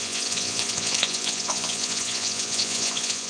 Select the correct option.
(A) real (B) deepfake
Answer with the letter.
B